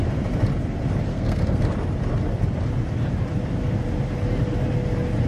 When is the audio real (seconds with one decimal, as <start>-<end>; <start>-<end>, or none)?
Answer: 0.0-1.1; 1.6-5.3